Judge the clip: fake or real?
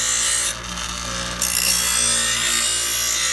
real